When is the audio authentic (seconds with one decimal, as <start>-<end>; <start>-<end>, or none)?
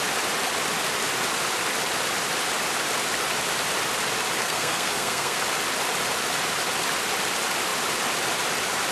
0.0-4.4; 5.4-8.9